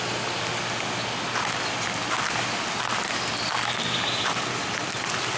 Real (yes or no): yes